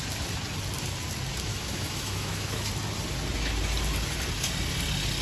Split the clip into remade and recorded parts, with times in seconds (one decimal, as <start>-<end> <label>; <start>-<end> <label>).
0.0-1.5 recorded; 1.5-2.7 remade; 2.7-5.2 recorded